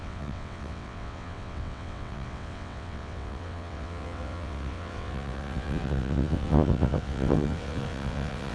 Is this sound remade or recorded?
remade